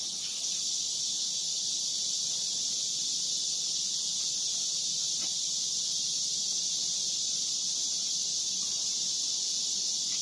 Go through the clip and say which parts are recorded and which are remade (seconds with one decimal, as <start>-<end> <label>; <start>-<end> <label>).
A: 0.0-10.2 recorded